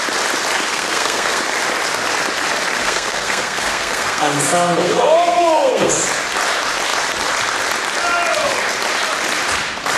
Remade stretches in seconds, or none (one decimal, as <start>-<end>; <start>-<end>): 0.7-1.4; 2.8-5.9